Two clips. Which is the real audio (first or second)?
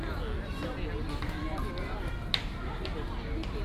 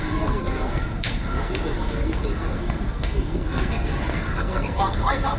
first